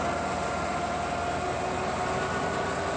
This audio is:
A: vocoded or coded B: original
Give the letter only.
B